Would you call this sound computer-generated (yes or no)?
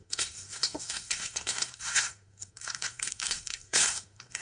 yes